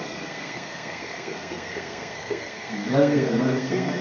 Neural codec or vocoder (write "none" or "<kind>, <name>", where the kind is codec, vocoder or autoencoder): codec, SNAC